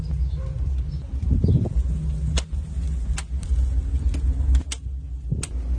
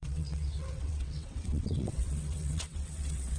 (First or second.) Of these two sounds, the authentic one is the first